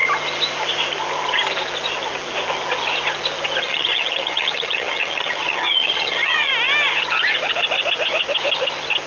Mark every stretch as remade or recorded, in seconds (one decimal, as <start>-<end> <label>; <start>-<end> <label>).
0.0-3.6 recorded; 3.6-6.5 remade; 6.5-9.1 recorded